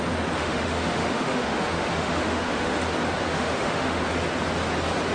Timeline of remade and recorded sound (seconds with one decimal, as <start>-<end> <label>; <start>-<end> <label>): 0.0-0.4 recorded; 0.4-2.8 remade; 2.8-3.3 recorded; 3.3-4.0 remade; 4.0-5.1 recorded